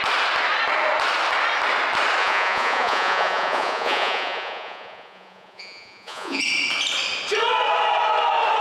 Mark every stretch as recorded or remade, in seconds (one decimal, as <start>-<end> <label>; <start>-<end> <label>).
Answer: 0.0-2.2 recorded; 2.2-6.4 remade; 6.4-8.6 recorded